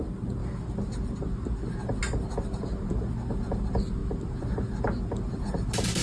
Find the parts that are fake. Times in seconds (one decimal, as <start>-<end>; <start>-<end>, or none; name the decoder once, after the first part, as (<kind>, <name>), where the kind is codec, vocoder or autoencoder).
none

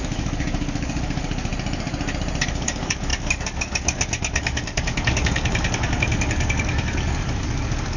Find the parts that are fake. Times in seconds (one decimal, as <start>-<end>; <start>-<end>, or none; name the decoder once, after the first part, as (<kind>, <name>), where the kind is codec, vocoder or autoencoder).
0.0-1.5 (codec, DAC); 2.4-8.0